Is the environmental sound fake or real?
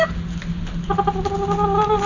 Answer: real